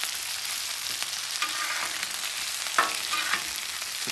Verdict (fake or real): real